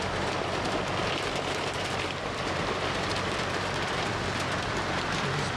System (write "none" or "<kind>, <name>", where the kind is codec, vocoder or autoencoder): vocoder, BigVGAN v2